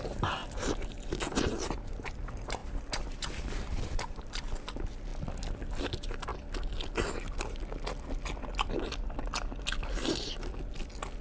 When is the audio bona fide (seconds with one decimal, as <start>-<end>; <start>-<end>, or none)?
5.1-5.8; 6.3-11.2